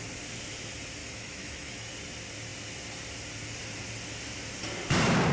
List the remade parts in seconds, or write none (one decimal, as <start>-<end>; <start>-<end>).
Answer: 1.0-1.9